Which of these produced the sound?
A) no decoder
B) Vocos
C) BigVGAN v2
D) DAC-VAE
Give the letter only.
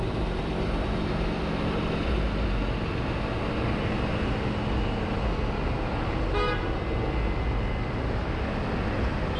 A